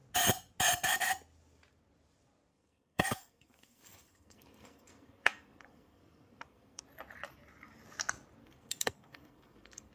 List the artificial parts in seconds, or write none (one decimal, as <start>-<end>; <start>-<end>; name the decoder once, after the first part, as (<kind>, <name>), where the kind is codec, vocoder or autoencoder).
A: 2.5-6.8 (codec, SNAC); 8.4-9.9